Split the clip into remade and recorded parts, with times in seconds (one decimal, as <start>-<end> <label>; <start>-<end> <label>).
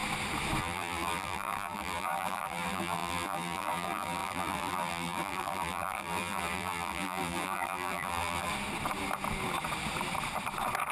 0.0-0.6 recorded; 0.6-8.5 remade; 8.5-10.9 recorded